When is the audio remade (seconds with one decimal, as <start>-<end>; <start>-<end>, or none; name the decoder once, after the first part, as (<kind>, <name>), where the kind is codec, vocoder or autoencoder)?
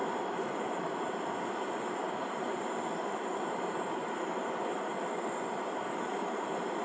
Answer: 0.0-4.1 (vocoder, BigVGAN v2)